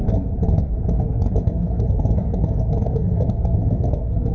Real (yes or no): no